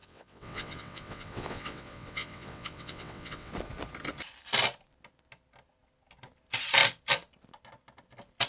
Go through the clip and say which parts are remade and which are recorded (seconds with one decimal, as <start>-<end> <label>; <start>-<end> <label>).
0.0-3.5 remade; 3.5-8.5 recorded

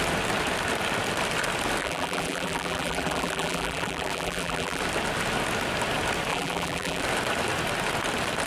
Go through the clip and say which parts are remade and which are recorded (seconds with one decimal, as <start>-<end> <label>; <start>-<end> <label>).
0.0-1.8 recorded; 1.8-4.8 remade; 4.8-6.3 recorded; 6.3-7.0 remade; 7.0-8.5 recorded